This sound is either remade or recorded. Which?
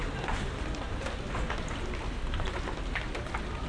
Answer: recorded